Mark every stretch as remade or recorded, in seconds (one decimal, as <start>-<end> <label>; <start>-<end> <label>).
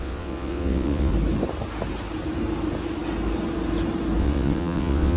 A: 0.0-1.1 remade; 1.1-4.2 recorded; 4.2-5.2 remade